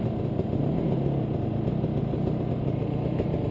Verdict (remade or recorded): recorded